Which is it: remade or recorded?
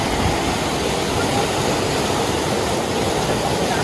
recorded